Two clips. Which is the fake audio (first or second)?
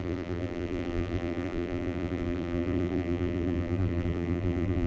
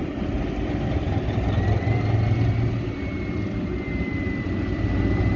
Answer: first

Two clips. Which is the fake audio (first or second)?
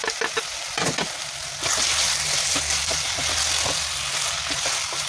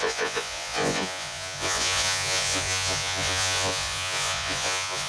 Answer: second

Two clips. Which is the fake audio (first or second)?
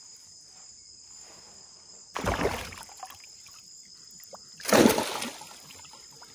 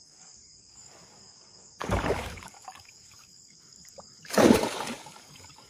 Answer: second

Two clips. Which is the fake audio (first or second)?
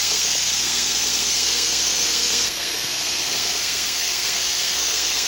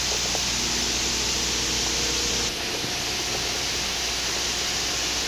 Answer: first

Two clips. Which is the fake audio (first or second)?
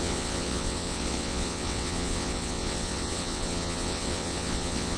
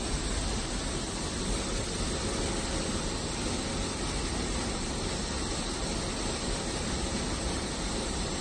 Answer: first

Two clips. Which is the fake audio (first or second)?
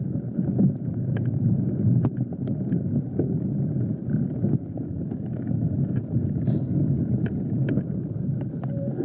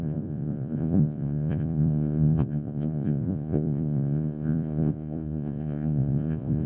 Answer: second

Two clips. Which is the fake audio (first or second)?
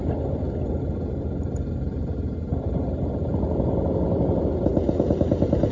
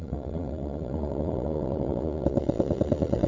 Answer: second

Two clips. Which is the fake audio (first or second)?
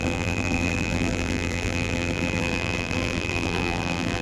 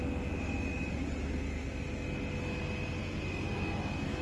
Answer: first